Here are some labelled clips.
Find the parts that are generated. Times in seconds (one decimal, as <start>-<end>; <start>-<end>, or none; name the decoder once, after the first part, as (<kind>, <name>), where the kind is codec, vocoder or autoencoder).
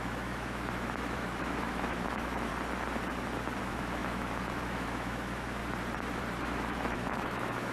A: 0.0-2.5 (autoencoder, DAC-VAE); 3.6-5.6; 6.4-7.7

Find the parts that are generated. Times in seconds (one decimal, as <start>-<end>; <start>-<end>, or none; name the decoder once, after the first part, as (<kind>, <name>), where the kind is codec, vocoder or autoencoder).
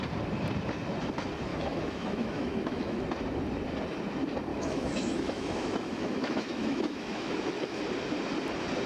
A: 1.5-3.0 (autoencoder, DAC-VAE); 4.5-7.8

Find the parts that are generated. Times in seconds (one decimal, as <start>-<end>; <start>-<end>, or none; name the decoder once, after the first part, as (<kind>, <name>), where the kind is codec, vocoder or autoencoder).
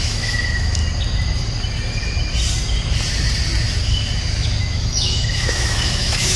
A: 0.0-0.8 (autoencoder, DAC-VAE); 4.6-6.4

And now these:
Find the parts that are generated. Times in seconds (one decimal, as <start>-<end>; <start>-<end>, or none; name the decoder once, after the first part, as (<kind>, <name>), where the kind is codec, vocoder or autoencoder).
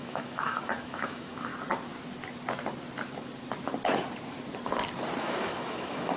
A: 0.0-1.5 (autoencoder, DAC-VAE); 5.2-6.2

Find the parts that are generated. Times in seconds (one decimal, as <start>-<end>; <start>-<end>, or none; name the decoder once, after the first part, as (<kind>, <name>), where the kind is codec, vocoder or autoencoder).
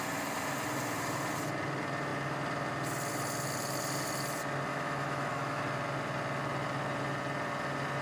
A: 4.7-5.6 (autoencoder, DAC-VAE)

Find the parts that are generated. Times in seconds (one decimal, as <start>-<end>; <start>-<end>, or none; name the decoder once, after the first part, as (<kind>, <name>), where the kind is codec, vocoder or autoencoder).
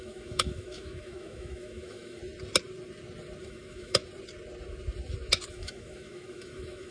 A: 0.0-2.2 (autoencoder, DAC-VAE); 3.4-4.0; 5.5-6.9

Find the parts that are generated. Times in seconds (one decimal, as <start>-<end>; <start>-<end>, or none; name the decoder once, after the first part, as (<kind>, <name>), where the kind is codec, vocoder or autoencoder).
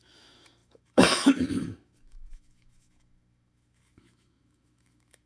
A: 0.0-5.3 (autoencoder, DAC-VAE)